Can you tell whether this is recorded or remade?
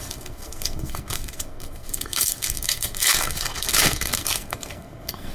remade